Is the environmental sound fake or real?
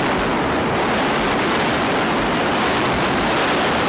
real